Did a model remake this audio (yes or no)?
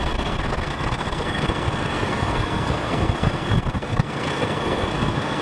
yes